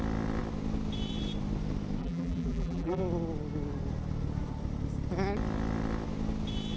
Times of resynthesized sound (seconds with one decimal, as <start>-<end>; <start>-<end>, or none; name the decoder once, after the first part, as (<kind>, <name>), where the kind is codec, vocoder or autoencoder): 2.0-3.0 (vocoder, BigVGAN v2)